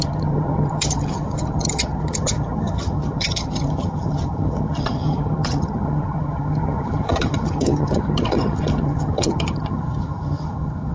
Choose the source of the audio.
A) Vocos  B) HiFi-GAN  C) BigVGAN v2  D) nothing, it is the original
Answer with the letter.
B